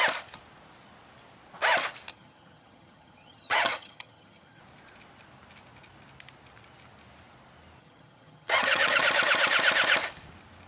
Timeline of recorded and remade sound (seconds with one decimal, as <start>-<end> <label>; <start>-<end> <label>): 0.0-2.1 recorded; 2.1-4.6 remade; 4.6-7.8 recorded; 7.8-9.0 remade; 9.0-10.7 recorded